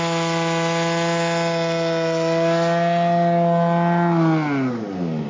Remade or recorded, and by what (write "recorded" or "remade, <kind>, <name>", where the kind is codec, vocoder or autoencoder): recorded